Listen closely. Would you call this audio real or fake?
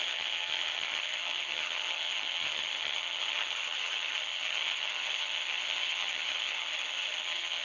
fake